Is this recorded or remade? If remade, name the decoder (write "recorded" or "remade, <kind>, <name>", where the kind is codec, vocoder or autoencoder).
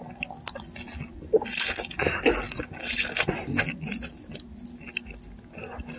recorded